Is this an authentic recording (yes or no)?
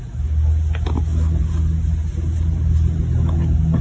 yes